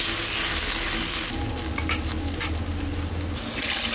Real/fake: real